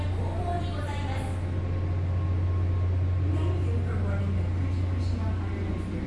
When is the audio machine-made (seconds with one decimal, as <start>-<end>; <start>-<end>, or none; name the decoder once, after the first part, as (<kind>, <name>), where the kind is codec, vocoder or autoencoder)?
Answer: none